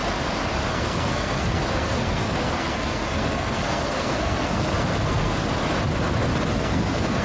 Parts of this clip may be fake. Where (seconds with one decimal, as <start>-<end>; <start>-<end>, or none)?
0.7-5.4; 6.5-7.2